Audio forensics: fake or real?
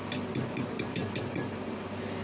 real